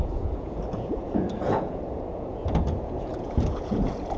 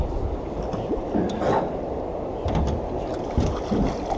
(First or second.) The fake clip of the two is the first